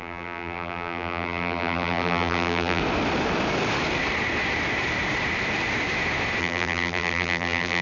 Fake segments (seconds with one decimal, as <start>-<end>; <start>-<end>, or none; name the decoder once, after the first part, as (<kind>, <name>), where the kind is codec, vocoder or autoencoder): 0.0-2.8 (vocoder, BigVGAN v2); 6.4-7.8